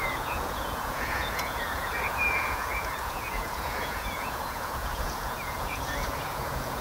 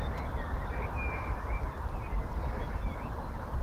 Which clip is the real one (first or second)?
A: second